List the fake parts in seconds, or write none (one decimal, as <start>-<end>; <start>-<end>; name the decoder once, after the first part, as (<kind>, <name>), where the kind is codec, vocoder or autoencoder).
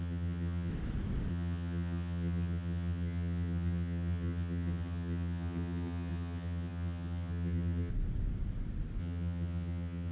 0.0-0.7 (vocoder, HiFi-GAN); 1.3-7.9; 9.0-10.1